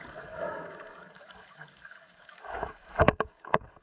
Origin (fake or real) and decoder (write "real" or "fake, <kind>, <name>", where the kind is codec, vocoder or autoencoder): fake, codec, DAC